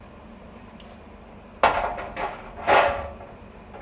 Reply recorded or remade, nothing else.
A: recorded